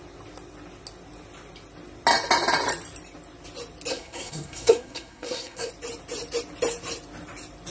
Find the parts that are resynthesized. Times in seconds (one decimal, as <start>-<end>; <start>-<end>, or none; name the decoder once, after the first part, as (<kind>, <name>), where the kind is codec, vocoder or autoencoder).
3.9-5.7 (codec, SNAC)

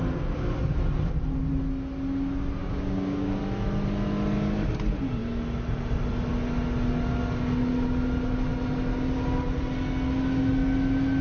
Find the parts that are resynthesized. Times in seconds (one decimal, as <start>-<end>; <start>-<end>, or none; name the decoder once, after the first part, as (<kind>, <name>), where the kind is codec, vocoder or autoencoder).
2.6-3.4 (codec, DAC)

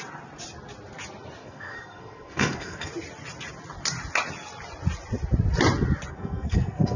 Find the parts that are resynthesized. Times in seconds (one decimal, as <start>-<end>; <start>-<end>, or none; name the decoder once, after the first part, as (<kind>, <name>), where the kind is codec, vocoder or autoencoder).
1.4-2.9 (codec, SNAC); 6.1-7.0

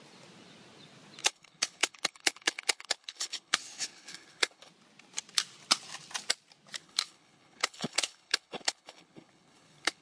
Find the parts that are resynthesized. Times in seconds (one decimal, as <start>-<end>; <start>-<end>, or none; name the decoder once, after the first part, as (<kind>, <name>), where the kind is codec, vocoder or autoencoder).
1.2-4.7 (codec, HILCodec); 6.8-10.0

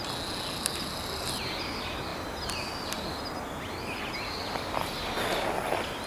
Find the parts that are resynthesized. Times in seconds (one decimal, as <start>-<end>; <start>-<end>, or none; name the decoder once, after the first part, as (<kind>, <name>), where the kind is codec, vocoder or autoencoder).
none

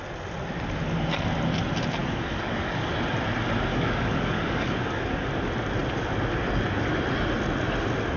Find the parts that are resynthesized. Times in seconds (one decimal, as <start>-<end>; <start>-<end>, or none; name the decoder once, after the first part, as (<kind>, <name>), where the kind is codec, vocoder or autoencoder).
2.0-2.9 (codec, DAC); 3.7-5.3

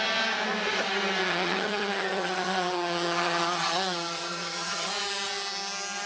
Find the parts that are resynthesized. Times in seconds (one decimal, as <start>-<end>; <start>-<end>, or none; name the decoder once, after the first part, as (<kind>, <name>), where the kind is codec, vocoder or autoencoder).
1.2-4.9 (vocoder, HiFi-GAN)